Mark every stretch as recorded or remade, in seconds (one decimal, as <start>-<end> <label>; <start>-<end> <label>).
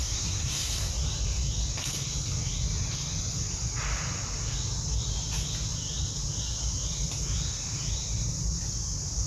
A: 0.0-0.9 remade; 0.9-9.3 recorded